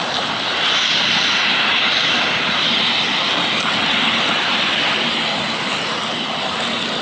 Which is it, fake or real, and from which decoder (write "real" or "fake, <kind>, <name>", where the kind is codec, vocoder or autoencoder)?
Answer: real